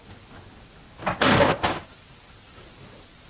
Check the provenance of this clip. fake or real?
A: real